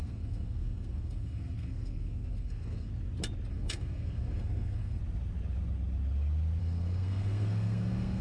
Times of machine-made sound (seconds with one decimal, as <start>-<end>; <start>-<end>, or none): 0.0-2.9; 3.5-5.0; 6.6-8.2